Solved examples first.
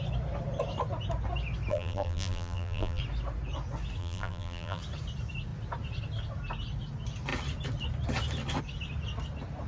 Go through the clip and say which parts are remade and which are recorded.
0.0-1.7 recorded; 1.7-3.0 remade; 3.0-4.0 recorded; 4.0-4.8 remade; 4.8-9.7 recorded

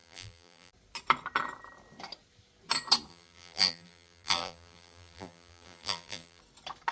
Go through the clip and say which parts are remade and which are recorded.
0.0-0.7 remade; 0.7-3.1 recorded; 3.1-6.4 remade; 6.4-6.9 recorded

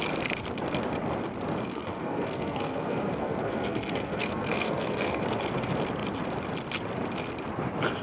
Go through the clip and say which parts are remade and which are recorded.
0.0-1.7 recorded; 1.7-5.2 remade; 5.2-8.0 recorded

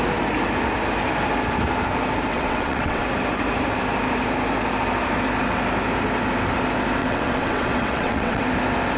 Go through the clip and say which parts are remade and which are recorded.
0.0-2.3 recorded; 2.3-3.0 remade; 3.0-7.0 recorded; 7.0-8.4 remade; 8.4-9.0 recorded

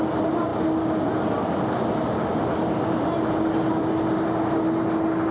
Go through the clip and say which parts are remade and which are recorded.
0.0-5.3 recorded